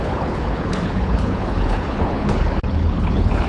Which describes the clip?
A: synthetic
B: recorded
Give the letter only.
A